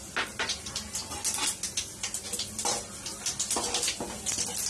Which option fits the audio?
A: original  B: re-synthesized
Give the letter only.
A